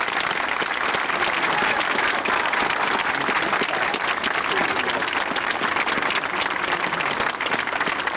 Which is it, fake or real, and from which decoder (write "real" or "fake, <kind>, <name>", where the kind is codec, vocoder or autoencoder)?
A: real